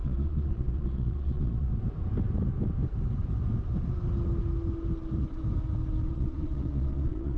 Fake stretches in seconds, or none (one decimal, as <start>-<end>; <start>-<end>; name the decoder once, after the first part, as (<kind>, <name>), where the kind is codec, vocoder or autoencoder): 0.0-1.7 (vocoder, Vocos); 6.1-7.4